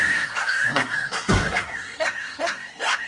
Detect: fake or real fake